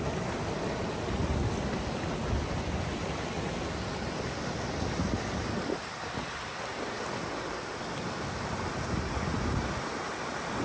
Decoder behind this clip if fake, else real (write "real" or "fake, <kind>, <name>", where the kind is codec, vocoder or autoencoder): real